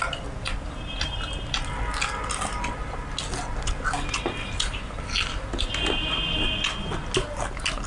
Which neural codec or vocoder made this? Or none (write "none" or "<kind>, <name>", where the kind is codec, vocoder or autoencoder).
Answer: none